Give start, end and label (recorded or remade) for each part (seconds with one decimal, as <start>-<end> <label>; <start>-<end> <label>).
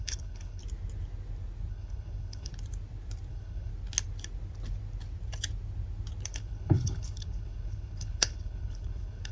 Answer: 0.0-0.6 remade; 0.6-1.7 recorded; 1.7-2.5 remade; 2.5-3.3 recorded; 3.3-3.7 remade; 3.7-6.3 recorded; 6.3-9.3 remade